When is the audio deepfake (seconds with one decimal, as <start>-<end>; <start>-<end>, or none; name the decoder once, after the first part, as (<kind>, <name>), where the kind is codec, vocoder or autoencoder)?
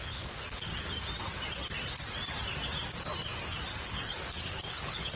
0.0-0.7 (codec, HILCodec); 3.8-5.2